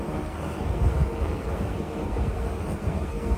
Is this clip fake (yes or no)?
yes